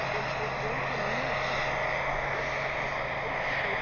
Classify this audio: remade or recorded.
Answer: recorded